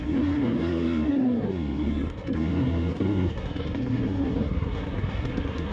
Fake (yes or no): yes